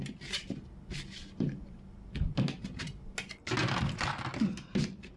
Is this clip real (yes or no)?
yes